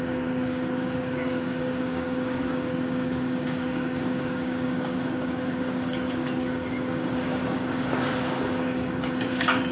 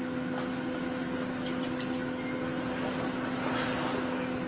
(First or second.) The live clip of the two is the second